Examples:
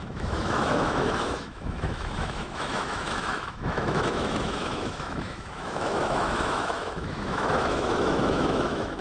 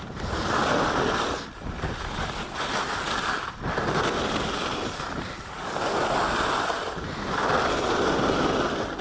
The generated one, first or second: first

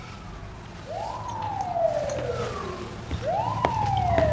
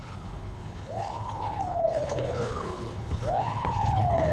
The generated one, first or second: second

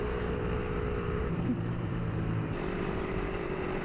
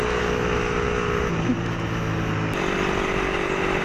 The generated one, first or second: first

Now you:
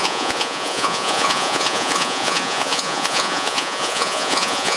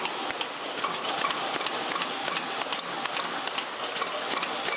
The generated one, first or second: first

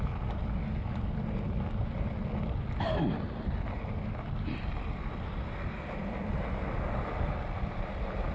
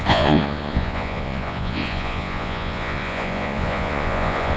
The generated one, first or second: second